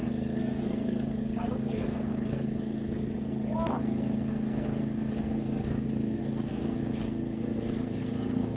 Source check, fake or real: fake